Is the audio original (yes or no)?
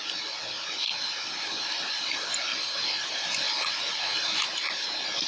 yes